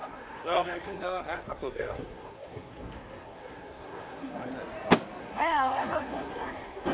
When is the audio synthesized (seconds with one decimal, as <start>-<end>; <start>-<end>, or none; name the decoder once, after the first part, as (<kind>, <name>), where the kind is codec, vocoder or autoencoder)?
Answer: 0.0-4.5 (codec, SNAC); 5.2-6.9